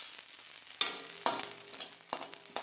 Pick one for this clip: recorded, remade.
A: recorded